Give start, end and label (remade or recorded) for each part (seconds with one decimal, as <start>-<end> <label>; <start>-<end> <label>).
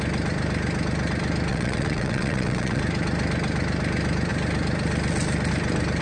0.0-1.5 recorded; 1.5-2.8 remade; 2.8-6.0 recorded